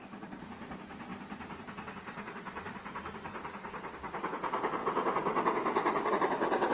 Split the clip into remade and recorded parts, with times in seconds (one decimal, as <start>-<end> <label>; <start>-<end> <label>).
0.0-6.7 recorded